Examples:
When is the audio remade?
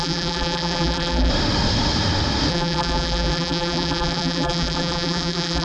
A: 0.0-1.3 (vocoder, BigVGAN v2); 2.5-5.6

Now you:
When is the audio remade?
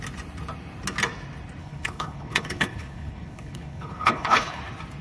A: 1.6-4.6 (codec, HILCodec)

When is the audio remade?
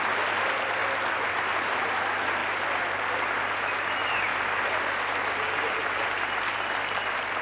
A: none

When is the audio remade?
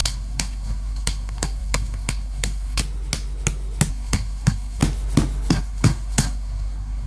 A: 0.0-2.8 (codec, SNAC); 3.9-4.8; 5.5-7.1